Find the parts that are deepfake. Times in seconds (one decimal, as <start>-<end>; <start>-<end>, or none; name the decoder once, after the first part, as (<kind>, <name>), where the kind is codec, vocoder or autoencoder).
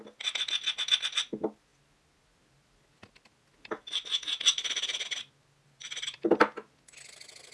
none